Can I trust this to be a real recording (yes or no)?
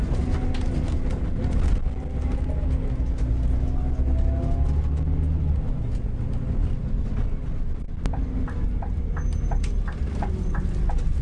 yes